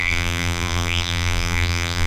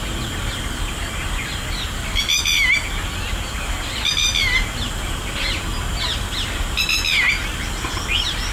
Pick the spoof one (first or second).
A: first